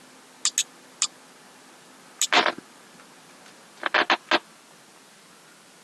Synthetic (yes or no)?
no